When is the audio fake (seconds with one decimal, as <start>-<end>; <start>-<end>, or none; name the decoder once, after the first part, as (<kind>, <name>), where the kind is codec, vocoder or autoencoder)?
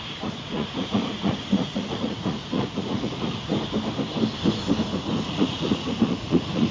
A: 0.0-3.5 (vocoder, Vocos); 5.3-6.7